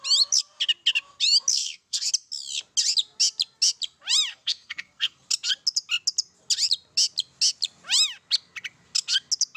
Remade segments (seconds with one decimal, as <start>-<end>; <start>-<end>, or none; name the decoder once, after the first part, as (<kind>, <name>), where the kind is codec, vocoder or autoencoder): 1.5-2.1 (codec, SNAC); 4.3-5.2